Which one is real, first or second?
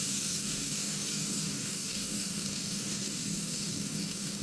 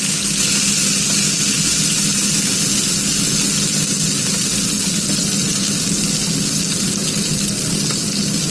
second